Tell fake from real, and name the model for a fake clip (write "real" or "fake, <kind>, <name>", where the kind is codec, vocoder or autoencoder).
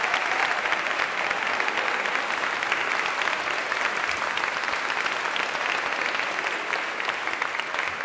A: real